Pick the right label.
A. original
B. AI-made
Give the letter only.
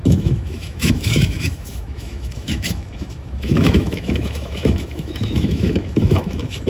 B